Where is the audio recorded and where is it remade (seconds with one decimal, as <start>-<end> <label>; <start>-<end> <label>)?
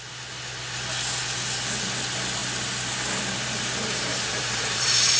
0.0-4.1 recorded; 4.1-5.2 remade